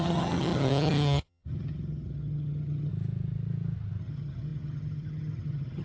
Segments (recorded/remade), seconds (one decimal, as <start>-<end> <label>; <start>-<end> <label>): 0.0-2.9 remade; 2.9-4.0 recorded; 4.0-5.8 remade